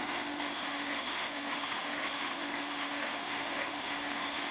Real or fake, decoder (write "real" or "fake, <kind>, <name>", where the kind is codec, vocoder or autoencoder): fake, autoencoder, DAC-VAE